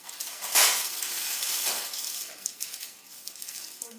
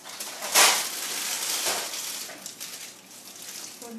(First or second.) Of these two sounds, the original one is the second